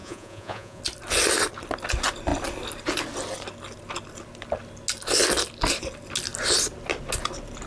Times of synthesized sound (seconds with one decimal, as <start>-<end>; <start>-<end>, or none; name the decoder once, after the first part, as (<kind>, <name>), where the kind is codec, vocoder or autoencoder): 0.0-0.8 (vocoder, Vocos)